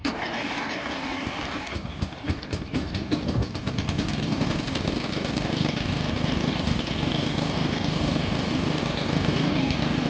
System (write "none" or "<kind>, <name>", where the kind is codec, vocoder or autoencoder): codec, DAC